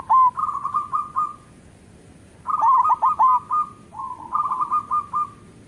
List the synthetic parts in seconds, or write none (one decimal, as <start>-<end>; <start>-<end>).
0.6-1.9; 3.9-4.5